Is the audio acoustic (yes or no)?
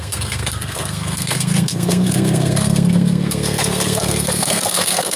no